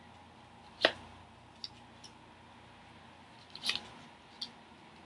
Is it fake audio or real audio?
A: real